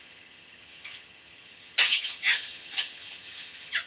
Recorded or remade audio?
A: remade